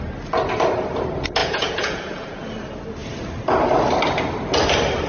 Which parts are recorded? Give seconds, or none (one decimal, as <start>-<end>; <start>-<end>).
0.0-1.4; 2.4-5.1